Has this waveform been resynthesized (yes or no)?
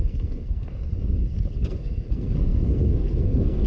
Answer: yes